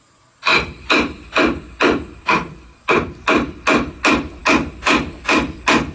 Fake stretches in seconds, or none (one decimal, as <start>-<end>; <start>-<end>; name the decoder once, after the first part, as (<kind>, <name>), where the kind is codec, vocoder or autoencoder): none